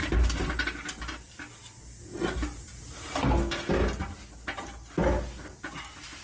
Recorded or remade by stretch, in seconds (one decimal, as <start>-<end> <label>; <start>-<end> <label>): 0.0-6.2 recorded